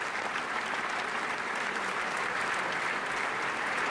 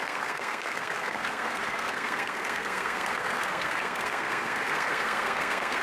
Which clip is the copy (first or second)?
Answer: second